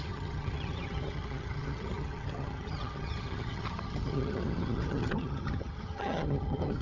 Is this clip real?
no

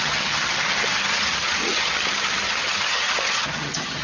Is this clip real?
no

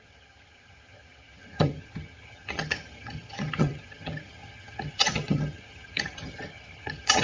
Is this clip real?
no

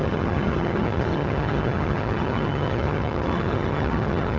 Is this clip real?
no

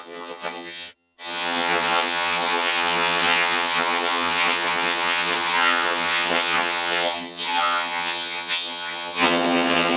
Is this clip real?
no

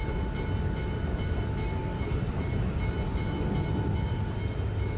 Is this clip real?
yes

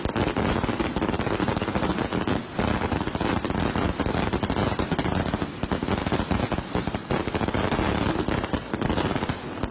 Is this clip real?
yes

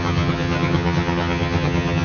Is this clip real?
no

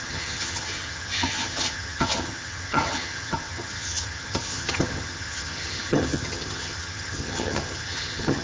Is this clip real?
no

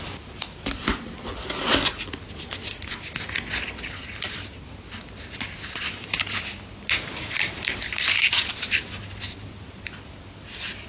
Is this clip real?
yes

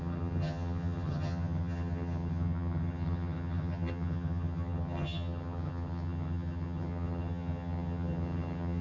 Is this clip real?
no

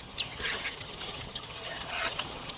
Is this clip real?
no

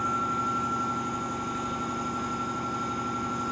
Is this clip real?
yes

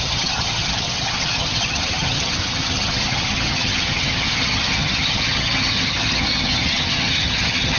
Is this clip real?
no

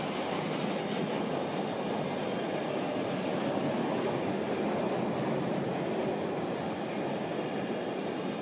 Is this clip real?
yes